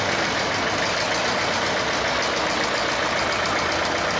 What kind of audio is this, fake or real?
real